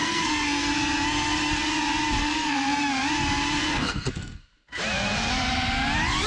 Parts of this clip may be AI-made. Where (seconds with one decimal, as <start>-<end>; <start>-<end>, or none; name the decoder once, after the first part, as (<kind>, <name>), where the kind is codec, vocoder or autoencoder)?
0.0-0.7 (codec, SNAC); 2.2-2.8; 3.6-4.4